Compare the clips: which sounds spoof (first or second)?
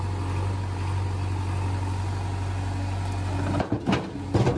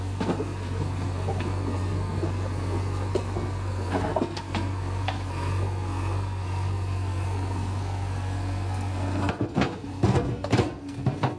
second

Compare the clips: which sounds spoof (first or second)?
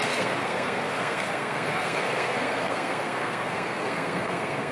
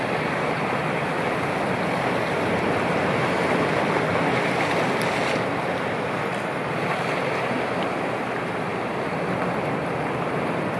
first